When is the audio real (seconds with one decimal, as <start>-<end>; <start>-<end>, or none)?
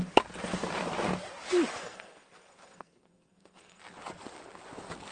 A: 0.0-1.8; 3.8-5.1